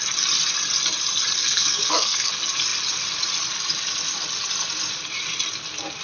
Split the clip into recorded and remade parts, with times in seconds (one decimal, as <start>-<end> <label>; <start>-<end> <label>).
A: 0.0-1.4 recorded; 1.4-2.3 remade; 2.3-6.0 recorded